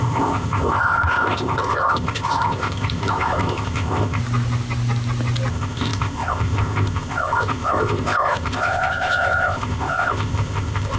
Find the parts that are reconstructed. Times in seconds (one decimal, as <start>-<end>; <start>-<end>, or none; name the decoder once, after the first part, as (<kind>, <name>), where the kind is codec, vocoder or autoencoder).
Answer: 0.0-4.2 (codec, ZipCodec); 5.5-11.0